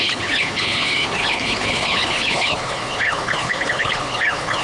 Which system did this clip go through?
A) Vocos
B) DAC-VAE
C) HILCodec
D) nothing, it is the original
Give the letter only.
C